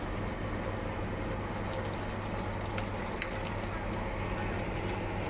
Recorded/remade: recorded